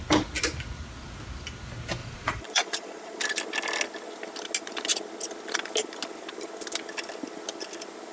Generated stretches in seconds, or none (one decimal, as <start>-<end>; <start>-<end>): 2.0-3.2